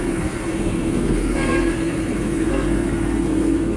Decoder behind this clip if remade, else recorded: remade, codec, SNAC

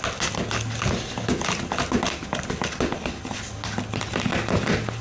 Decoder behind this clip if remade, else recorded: recorded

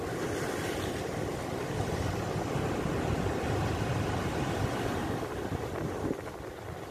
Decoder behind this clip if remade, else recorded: recorded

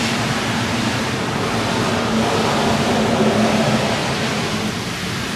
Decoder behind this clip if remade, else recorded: recorded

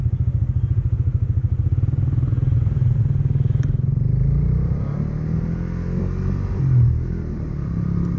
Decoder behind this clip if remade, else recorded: recorded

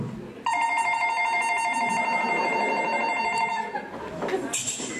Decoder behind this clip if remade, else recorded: recorded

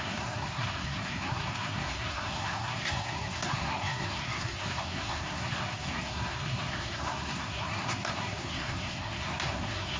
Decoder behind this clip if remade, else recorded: remade, codec, SNAC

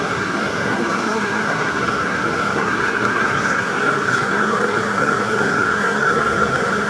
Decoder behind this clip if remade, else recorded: remade, codec, SNAC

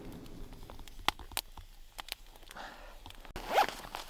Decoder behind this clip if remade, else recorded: recorded